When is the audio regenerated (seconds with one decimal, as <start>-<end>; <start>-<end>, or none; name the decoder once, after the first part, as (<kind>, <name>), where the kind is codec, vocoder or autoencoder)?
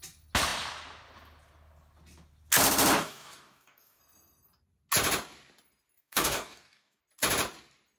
3.0-4.0 (codec, DAC); 6.0-7.0